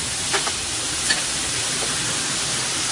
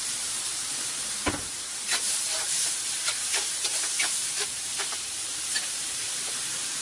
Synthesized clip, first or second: second